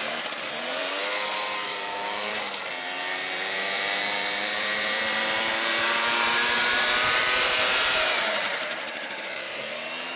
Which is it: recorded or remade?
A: remade